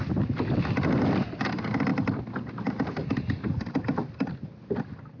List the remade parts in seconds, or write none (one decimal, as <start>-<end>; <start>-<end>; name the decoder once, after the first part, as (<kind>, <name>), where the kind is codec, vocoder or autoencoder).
none